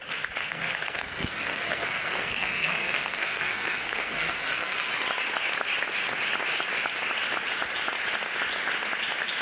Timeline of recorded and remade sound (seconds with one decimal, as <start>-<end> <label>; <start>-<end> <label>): 0.0-0.4 recorded; 0.4-4.9 remade; 4.9-9.4 recorded